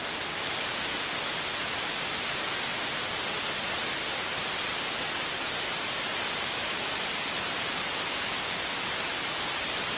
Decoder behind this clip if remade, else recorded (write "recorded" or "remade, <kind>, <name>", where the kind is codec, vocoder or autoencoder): recorded